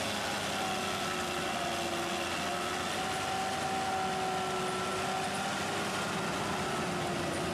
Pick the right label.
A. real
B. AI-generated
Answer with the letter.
A